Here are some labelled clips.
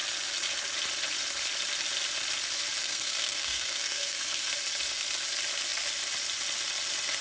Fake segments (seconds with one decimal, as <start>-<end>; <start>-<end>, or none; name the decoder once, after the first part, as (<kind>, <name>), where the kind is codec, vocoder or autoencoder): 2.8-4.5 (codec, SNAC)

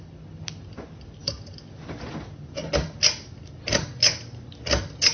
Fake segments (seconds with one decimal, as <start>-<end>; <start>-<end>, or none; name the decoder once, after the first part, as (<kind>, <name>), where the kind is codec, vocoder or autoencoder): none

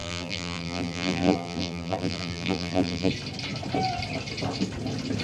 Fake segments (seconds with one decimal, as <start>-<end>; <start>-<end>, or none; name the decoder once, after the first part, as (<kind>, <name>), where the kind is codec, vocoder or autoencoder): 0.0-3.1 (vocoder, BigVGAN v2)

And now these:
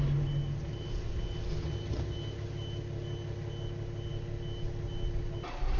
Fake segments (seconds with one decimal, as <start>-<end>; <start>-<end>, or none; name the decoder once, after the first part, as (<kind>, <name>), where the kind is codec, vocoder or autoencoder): none

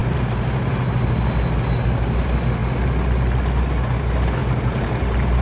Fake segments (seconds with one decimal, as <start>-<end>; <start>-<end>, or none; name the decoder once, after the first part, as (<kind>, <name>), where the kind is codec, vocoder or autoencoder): 0.0-0.9 (vocoder, BigVGAN v2); 4.4-5.4